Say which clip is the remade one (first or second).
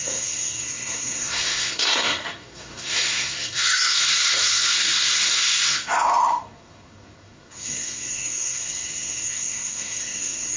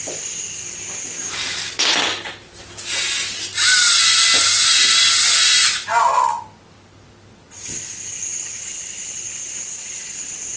first